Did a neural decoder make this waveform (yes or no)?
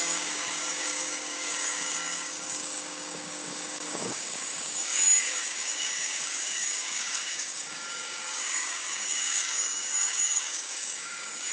yes